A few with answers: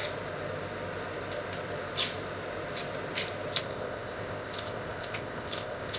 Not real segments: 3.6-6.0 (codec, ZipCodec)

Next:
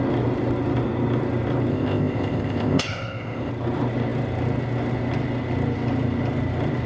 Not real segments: 1.7-3.5 (codec, ZipCodec)

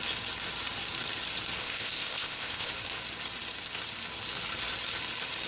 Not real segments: 1.6-2.7 (codec, ZipCodec)

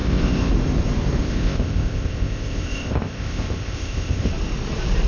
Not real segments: 0.0-0.5 (codec, ZipCodec); 1.2-4.3

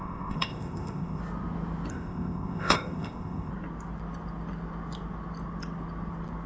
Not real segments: 0.0-1.2 (codec, ZipCodec); 1.9-3.5

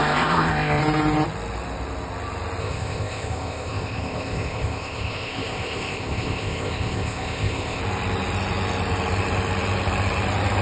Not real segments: 0.0-0.8 (codec, ZipCodec); 2.6-7.8

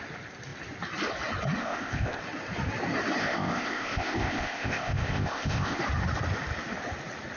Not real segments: 1.6-2.2 (codec, ZipCodec); 3.2-5.8